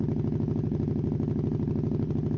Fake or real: real